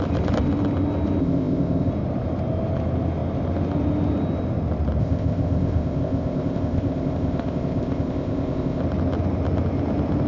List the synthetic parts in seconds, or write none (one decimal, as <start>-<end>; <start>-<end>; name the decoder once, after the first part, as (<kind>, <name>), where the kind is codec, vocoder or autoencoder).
1.2-1.9 (codec, ZipCodec); 5.0-8.8